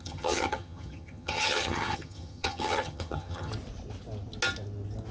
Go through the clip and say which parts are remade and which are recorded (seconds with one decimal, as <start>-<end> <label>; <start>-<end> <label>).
0.0-3.5 remade; 3.5-5.1 recorded